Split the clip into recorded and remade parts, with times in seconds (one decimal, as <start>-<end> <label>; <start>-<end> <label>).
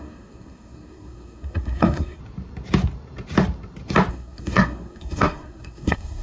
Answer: 0.0-2.2 remade; 2.2-4.1 recorded; 4.1-6.2 remade